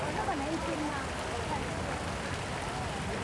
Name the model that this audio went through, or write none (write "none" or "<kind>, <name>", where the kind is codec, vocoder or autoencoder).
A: none